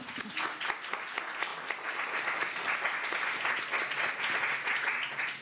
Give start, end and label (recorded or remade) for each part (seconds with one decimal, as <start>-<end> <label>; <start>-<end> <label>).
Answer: 0.0-5.4 recorded